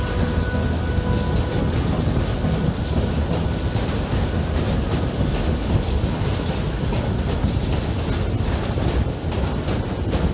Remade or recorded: recorded